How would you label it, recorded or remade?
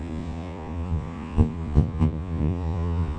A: remade